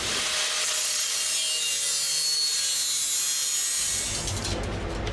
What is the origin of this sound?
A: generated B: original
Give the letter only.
B